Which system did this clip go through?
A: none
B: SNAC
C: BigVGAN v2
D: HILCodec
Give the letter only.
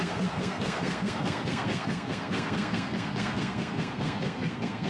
B